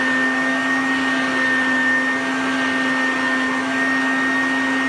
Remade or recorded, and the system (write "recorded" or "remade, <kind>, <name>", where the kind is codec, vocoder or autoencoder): recorded